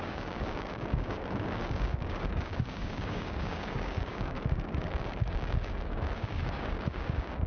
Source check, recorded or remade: remade